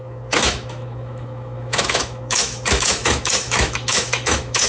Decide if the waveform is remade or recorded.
remade